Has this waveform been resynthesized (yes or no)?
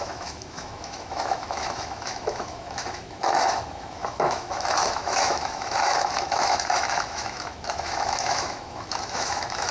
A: yes